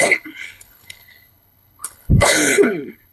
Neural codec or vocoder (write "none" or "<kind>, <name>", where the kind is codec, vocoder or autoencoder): codec, HILCodec